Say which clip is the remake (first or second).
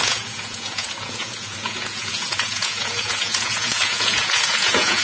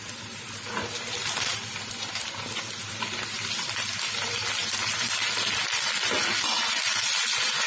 first